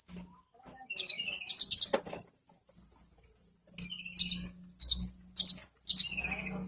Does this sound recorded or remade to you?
recorded